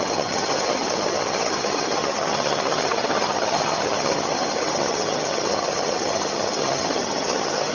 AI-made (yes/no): yes